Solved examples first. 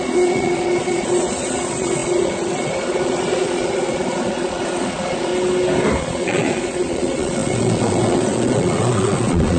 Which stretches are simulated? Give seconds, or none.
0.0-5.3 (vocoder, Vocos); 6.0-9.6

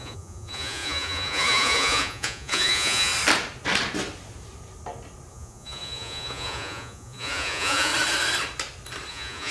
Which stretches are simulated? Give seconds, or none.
0.0-3.1 (vocoder, Vocos); 5.3-7.9; 9.1-9.5

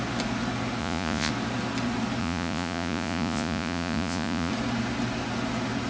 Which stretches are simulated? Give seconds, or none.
0.8-1.3 (vocoder, Vocos); 2.2-4.5

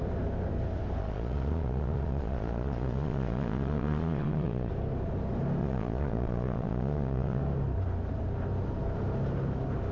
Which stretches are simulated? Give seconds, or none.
1.0-4.7 (vocoder, Vocos); 5.6-7.4

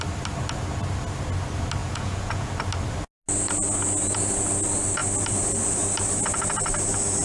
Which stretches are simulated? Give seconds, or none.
1.8-2.5 (vocoder, Vocos)

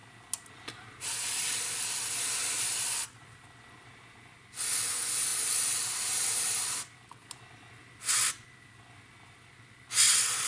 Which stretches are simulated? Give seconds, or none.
none

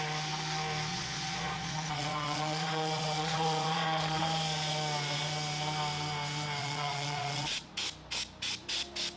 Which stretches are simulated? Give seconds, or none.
0.9-4.2 (vocoder, Vocos); 6.6-7.7

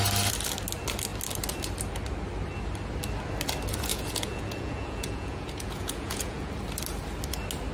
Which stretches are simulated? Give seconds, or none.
3.9-6.5 (vocoder, Vocos)